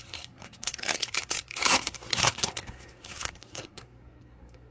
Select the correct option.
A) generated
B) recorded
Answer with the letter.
A